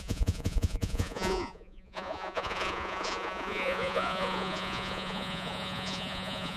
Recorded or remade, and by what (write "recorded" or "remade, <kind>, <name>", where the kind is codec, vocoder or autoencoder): remade, vocoder, Vocos